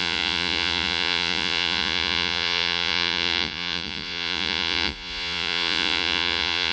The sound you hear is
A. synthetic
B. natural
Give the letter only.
A